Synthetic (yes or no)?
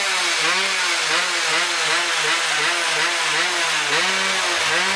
no